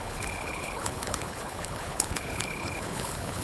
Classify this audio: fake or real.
fake